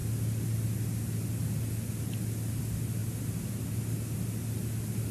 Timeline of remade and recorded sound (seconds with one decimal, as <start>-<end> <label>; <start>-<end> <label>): 0.0-5.1 recorded